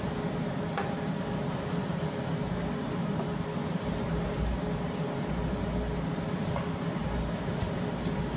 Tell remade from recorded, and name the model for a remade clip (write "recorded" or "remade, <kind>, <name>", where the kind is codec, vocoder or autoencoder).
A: recorded